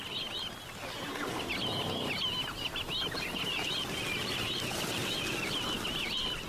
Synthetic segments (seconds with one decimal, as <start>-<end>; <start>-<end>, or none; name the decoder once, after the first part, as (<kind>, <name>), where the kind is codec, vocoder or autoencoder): none